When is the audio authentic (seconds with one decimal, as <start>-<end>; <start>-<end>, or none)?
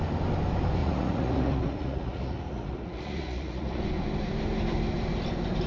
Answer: 0.0-0.8; 3.8-5.7